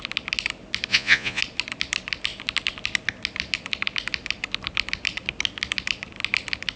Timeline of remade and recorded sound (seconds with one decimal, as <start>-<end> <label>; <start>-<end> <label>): 0.0-0.9 recorded; 0.9-1.4 remade; 1.4-6.8 recorded